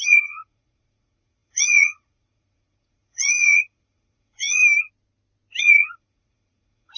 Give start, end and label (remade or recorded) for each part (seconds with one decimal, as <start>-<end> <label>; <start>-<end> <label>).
0.0-4.6 remade; 4.6-5.6 recorded; 5.6-7.0 remade